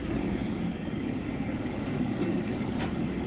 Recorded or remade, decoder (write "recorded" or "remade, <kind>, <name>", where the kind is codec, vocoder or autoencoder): remade, codec, DAC